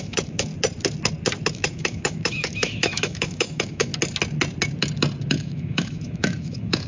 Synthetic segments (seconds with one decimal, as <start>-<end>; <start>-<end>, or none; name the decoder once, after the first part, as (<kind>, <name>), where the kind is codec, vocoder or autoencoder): 0.0-0.5 (autoencoder, DAC-VAE); 1.5-3.9; 5.3-6.9